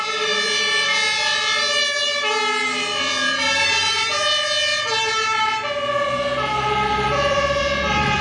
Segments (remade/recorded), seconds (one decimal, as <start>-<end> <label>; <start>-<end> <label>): 0.0-8.2 remade